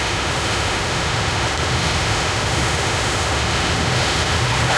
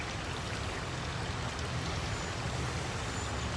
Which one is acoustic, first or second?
second